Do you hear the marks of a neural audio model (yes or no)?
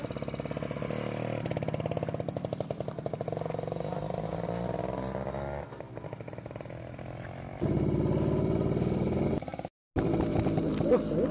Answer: no